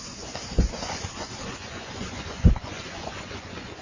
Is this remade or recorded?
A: remade